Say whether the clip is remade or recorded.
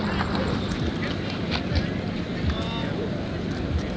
recorded